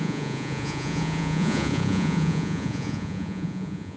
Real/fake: fake